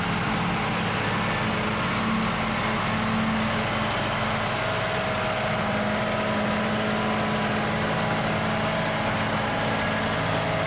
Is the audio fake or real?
real